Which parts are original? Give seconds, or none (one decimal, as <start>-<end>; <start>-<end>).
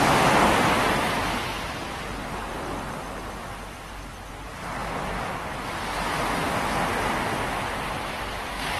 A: 0.0-8.8